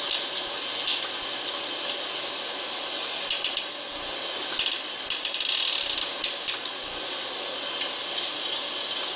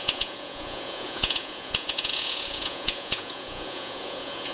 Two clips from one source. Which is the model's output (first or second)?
second